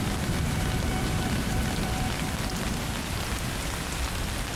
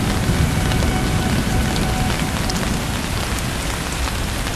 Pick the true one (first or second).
second